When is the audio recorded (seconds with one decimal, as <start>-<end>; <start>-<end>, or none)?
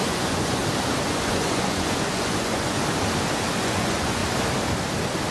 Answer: 0.6-1.1; 2.8-3.6; 4.2-5.3